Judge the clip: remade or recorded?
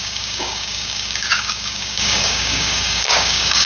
remade